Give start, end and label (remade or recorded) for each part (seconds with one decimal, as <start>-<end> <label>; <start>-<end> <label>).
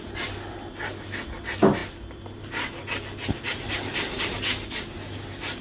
0.0-5.6 recorded